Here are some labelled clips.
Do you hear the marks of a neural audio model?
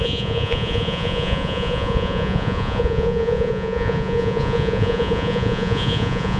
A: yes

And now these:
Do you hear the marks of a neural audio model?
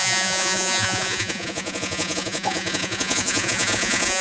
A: yes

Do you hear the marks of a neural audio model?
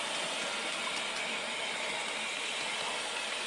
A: no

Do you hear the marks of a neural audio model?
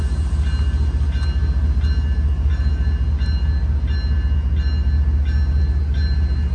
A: no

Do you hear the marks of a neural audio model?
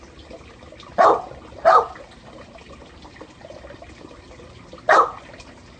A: no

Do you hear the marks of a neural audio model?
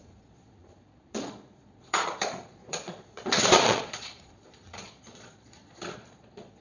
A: yes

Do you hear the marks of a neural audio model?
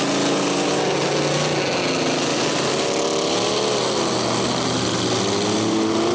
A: no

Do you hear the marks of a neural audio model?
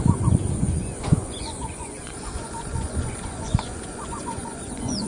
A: yes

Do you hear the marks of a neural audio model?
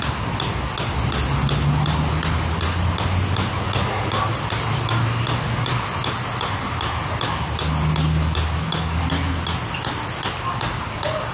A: no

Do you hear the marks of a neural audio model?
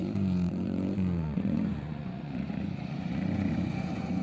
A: yes